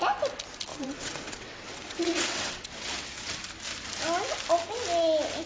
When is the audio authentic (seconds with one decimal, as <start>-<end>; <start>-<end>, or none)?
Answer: 0.0-0.7; 3.3-5.5